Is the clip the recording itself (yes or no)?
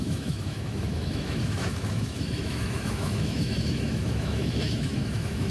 no